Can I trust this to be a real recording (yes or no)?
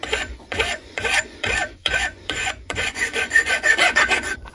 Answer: no